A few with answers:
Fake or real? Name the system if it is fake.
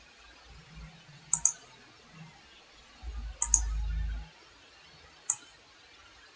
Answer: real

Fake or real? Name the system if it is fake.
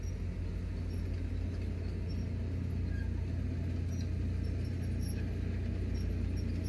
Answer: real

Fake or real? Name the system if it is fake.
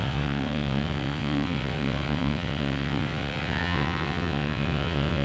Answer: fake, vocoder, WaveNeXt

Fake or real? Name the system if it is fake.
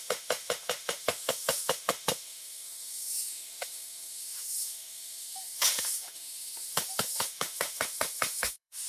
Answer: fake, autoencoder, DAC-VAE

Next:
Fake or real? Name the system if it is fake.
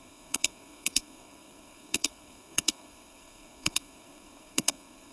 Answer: fake, codec, SNAC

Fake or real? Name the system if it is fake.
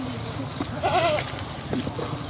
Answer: real